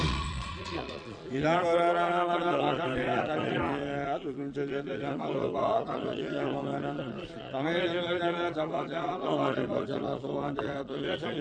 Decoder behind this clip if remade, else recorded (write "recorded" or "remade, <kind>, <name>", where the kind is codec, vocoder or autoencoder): remade, vocoder, Vocos